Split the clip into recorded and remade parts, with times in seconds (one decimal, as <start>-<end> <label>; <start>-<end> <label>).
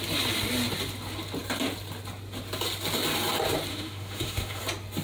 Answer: 0.0-3.7 recorded; 3.7-4.6 remade; 4.6-5.0 recorded